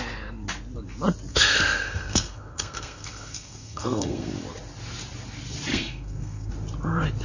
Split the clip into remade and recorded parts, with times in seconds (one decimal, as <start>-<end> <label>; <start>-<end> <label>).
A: 0.0-1.3 recorded; 1.3-4.3 remade; 4.3-5.7 recorded; 5.7-6.5 remade; 6.5-7.2 recorded